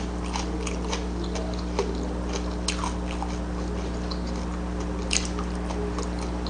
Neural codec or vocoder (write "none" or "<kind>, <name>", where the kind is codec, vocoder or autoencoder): none